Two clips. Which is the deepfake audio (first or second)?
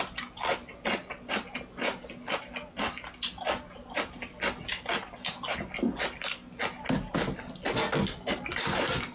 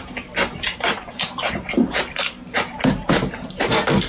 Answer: second